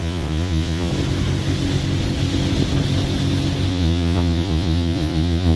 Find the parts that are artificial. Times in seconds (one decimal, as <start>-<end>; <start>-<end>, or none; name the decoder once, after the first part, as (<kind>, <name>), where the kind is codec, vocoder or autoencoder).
0.0-0.9 (vocoder, Vocos); 3.7-5.6